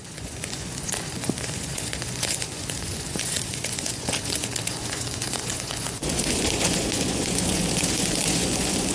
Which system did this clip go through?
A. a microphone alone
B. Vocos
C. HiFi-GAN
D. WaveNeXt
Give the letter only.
B